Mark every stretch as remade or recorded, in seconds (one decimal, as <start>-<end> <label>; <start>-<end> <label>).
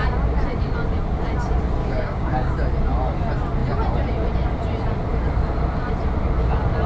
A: 0.0-1.8 recorded; 1.8-2.5 remade; 2.5-6.9 recorded